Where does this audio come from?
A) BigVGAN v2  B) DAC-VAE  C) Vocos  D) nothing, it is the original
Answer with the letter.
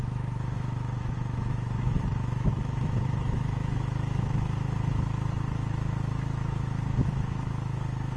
B